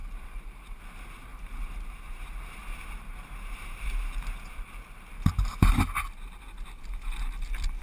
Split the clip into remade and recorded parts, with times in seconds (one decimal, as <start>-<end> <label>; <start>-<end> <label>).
0.0-0.8 remade; 0.8-1.3 recorded; 1.3-5.7 remade; 5.7-7.8 recorded